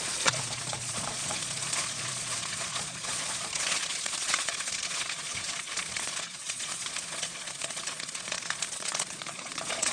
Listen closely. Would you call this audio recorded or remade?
remade